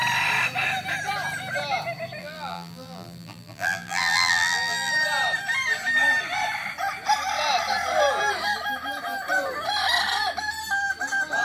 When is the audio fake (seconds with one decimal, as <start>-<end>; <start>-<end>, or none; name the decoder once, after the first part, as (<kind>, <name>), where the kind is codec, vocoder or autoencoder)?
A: 2.2-4.9 (vocoder, BigVGAN v2)